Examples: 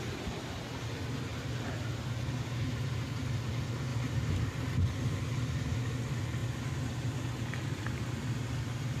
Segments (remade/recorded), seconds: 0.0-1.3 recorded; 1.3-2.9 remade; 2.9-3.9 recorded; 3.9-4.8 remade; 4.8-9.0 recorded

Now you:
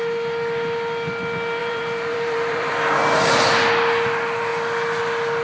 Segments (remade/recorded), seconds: 0.0-1.6 recorded; 1.6-3.0 remade; 3.0-5.4 recorded